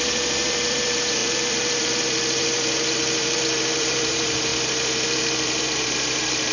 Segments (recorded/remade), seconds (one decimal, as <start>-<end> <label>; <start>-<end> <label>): 0.0-6.5 remade